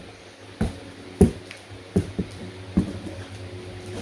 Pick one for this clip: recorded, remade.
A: recorded